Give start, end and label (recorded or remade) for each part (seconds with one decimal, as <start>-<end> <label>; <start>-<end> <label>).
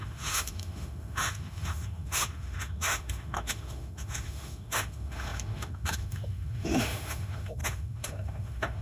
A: 0.0-8.8 remade